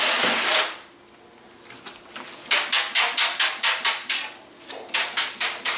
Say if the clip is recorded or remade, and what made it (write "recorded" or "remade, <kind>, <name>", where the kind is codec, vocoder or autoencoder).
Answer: recorded